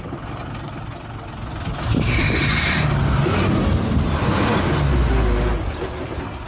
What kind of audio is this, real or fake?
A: real